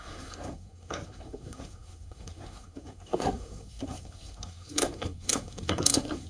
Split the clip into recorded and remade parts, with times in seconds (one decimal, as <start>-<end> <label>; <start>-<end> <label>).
0.0-6.3 remade